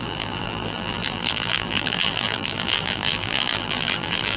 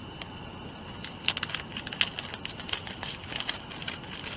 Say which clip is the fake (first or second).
first